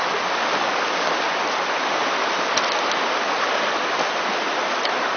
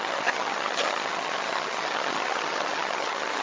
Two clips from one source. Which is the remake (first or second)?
second